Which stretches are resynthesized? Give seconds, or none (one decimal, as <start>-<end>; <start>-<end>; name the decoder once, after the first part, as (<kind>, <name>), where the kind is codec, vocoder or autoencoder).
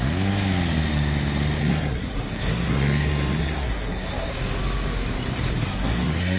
1.6-4.3 (codec, SNAC); 5.5-6.4